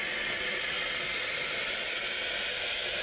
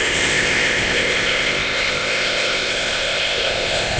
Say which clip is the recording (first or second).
first